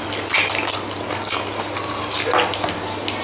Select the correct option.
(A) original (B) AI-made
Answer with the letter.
A